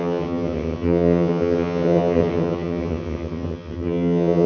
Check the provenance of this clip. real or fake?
fake